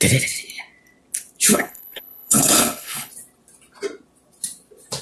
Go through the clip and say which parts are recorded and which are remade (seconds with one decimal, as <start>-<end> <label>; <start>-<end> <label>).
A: 0.0-1.5 recorded; 1.5-3.1 remade; 3.1-5.0 recorded